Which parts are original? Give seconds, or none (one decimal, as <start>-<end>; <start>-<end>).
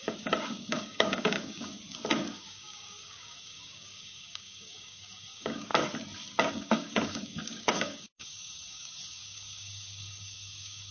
1.7-2.3; 5.7-6.5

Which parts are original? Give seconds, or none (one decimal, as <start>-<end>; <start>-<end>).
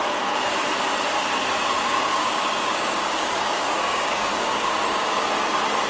0.0-1.8; 5.3-5.9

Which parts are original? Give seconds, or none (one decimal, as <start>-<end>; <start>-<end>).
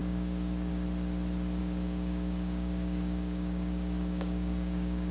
0.7-1.6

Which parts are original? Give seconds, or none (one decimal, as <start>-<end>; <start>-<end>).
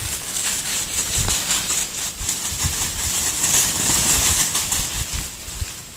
0.7-1.3; 1.8-3.3; 4.5-6.0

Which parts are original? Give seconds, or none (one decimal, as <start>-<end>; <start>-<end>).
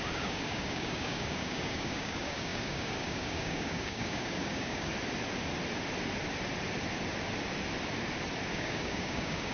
4.9-8.5